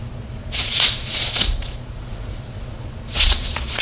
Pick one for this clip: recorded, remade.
remade